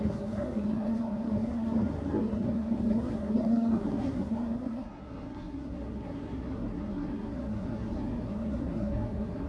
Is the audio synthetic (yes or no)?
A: yes